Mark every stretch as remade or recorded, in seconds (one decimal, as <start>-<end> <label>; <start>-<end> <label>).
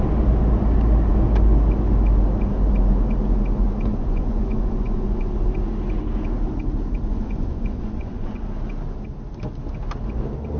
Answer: 0.0-3.9 recorded; 3.9-5.3 remade; 5.3-7.1 recorded; 7.1-8.4 remade; 8.4-10.6 recorded